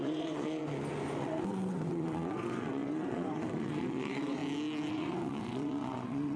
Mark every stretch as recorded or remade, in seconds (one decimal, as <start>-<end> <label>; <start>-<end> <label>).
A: 0.0-0.6 remade; 0.6-1.2 recorded; 1.2-4.4 remade; 4.4-4.9 recorded; 4.9-6.4 remade

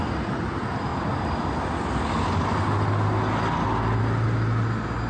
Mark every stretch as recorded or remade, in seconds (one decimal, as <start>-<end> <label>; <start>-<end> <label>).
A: 0.0-5.1 recorded

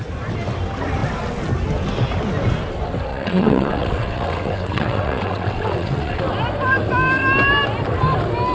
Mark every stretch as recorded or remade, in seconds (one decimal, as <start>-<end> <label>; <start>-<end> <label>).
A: 0.0-3.1 recorded; 3.1-6.2 remade; 6.2-8.5 recorded

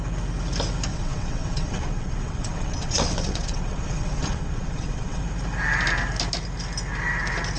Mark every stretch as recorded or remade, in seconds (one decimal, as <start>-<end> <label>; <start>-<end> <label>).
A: 0.0-0.9 recorded; 0.9-5.2 remade; 5.2-7.6 recorded

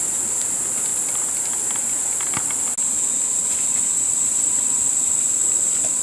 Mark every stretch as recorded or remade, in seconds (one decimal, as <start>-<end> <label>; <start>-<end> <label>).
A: 0.0-6.0 recorded

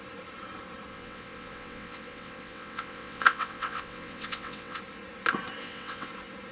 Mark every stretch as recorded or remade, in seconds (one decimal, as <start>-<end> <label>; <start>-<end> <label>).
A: 0.0-0.9 recorded; 0.9-4.8 remade; 4.8-5.6 recorded; 5.6-6.1 remade; 6.1-6.5 recorded